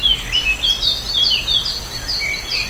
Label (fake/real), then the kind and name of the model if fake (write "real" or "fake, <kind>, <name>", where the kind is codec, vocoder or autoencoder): real